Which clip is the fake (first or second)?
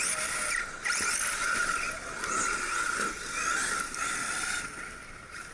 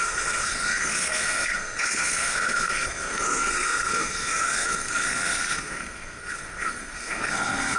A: second